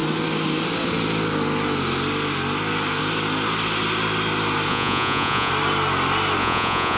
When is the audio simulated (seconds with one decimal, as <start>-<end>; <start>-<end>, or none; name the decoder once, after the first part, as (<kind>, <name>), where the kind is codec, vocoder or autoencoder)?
4.7-5.5 (vocoder, Vocos); 6.4-7.0